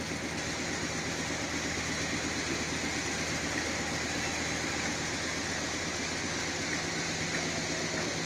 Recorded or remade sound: recorded